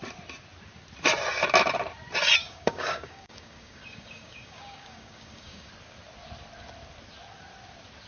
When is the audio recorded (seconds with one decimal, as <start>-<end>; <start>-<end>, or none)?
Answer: 0.0-2.4; 5.7-8.1